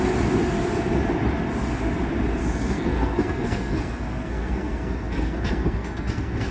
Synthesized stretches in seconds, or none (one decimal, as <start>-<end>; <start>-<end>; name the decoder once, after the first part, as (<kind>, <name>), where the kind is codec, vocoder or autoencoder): 2.4-6.5 (codec, SNAC)

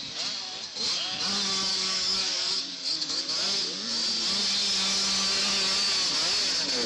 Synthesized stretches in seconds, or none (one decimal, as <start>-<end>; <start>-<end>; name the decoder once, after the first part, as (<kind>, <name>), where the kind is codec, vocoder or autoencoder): 1.7-3.2 (codec, DAC)

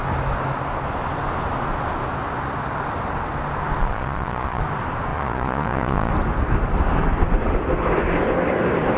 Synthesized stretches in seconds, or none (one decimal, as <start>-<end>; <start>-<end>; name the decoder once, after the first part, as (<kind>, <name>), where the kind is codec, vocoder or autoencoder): 3.8-4.6 (vocoder, Vocos); 5.1-6.1

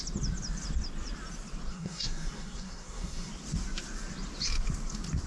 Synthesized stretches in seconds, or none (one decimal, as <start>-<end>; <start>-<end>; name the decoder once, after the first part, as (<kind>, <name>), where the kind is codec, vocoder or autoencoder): 1.7-3.3 (codec, SNAC)

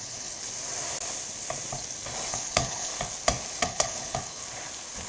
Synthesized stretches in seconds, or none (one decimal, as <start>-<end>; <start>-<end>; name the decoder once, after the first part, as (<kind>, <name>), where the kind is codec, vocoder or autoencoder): 0.0-0.4 (codec, HILCodec); 2.3-2.9; 3.6-4.4

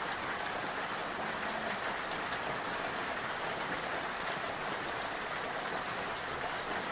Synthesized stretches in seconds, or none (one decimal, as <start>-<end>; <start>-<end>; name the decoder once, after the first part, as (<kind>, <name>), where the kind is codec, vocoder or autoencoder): none

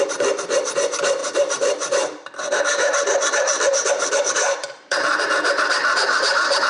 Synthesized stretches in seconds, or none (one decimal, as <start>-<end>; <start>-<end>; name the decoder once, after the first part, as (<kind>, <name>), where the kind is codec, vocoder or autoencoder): 1.2-5.2 (vocoder, BigVGAN v2)

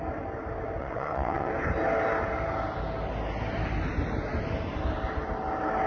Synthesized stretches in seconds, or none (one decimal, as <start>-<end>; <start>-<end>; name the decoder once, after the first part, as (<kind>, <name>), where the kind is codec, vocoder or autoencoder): 0.8-1.5 (vocoder, WaveNeXt)